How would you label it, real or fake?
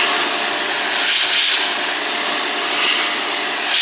real